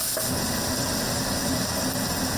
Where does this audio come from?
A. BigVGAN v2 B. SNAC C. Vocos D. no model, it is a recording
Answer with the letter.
D